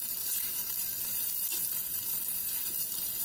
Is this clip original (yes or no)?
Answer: no